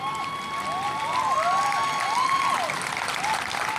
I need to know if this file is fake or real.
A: real